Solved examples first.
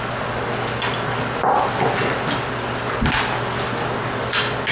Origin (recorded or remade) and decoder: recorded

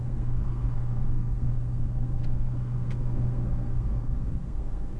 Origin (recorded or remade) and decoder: remade, codec, SNAC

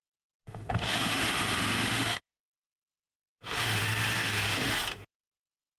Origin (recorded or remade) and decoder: remade, autoencoder, DAC-VAE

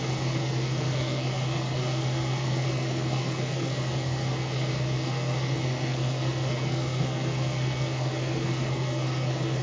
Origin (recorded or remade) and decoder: remade, codec, SNAC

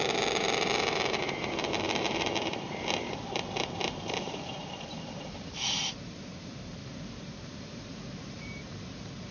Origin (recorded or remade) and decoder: remade, vocoder, BigVGAN v2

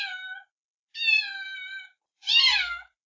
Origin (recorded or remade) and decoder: recorded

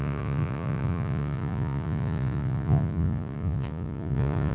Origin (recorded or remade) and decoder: remade, vocoder, Vocos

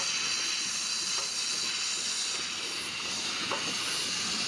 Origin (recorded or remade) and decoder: recorded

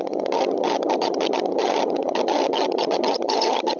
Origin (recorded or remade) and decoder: remade, vocoder, HiFi-GAN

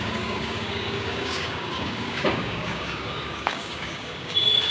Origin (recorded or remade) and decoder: remade, codec, DAC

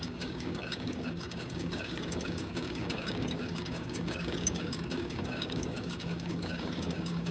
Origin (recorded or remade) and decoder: remade, codec, DAC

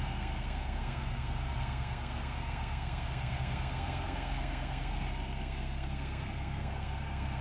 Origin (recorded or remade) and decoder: remade, codec, SNAC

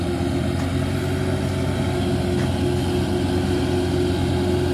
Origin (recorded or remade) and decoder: recorded